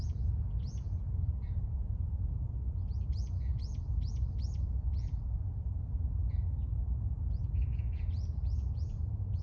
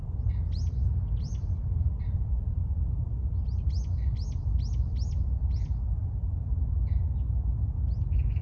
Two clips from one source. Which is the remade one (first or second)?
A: first